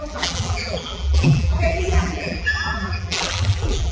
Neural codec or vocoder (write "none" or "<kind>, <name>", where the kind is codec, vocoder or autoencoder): vocoder, BigVGAN v2